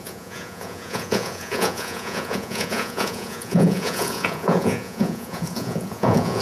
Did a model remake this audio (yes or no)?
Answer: yes